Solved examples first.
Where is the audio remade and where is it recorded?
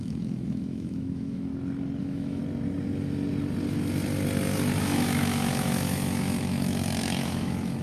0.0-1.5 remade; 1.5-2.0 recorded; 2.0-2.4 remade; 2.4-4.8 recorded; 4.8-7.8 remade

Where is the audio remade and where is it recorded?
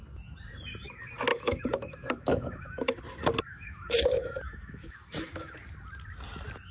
0.0-1.3 recorded; 1.3-3.0 remade; 3.0-3.5 recorded; 3.5-5.6 remade; 5.6-6.7 recorded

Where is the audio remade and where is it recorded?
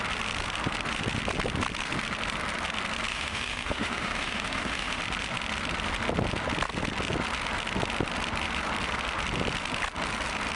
0.0-3.1 recorded; 3.1-5.0 remade; 5.0-10.6 recorded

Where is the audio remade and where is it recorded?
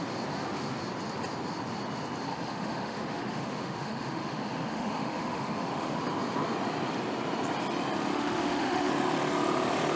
0.0-2.3 recorded; 2.3-6.0 remade; 6.0-8.1 recorded; 8.1-8.9 remade; 8.9-10.0 recorded